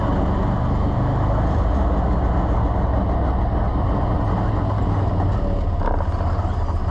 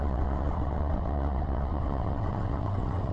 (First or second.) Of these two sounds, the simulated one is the second